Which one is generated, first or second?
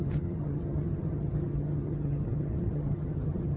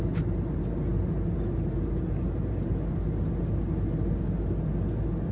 first